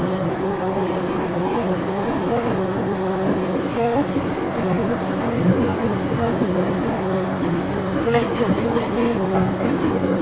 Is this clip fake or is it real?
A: fake